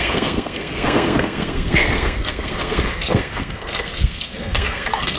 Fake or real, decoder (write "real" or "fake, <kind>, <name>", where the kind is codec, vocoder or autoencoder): fake, codec, SNAC